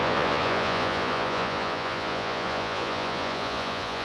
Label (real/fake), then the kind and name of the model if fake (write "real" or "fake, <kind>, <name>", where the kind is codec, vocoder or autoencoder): fake, vocoder, Vocos